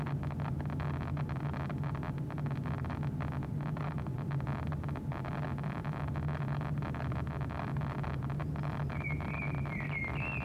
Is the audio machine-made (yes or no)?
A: no